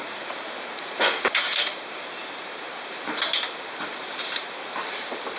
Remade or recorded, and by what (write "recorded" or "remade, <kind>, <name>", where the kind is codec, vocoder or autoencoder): remade, vocoder, BigVGAN v2